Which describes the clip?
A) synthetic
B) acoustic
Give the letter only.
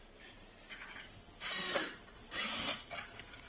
B